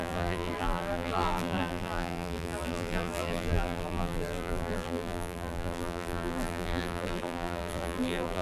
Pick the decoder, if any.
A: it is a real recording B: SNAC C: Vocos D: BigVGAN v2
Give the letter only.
D